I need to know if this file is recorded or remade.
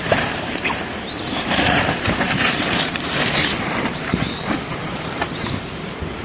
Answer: remade